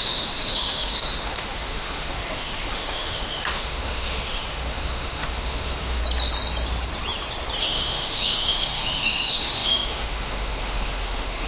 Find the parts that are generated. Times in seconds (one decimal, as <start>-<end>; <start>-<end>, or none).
0.0-6.0; 7.6-11.5

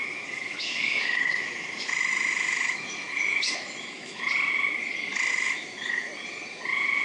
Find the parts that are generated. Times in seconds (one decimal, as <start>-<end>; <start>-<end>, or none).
0.0-4.2; 5.3-6.1

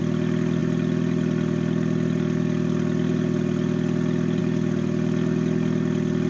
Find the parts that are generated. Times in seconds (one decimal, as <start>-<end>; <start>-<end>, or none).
none

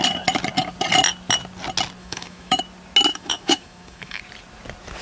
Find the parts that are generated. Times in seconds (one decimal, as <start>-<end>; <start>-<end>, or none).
2.0-2.6; 3.1-4.2

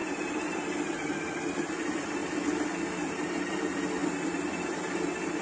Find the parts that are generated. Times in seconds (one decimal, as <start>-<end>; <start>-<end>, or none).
none